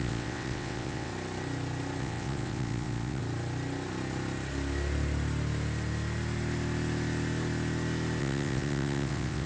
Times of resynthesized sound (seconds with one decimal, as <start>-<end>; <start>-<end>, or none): 0.0-1.1; 2.0-3.2; 8.2-9.5